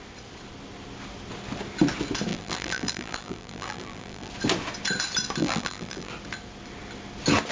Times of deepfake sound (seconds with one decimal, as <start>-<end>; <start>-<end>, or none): 2.3-4.3; 5.4-6.1